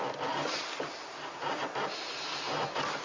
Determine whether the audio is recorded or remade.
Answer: recorded